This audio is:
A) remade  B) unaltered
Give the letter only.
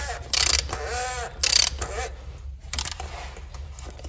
B